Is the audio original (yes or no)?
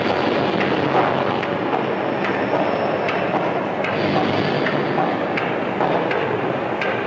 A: yes